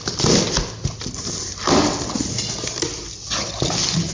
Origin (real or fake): real